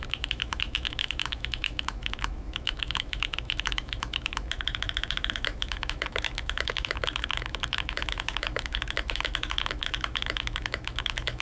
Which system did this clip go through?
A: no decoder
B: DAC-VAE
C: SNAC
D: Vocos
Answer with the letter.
B